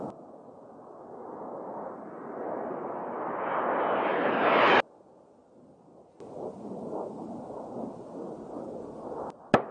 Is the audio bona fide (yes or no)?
yes